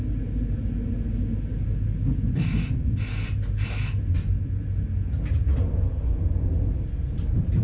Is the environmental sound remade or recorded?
recorded